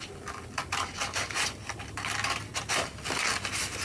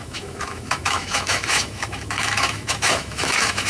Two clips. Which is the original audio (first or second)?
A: first